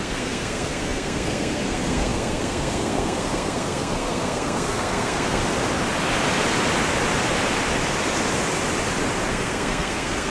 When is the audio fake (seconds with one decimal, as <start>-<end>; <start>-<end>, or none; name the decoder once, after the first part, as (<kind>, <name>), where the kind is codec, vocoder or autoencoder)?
0.0-5.4 (codec, SNAC); 9.3-10.3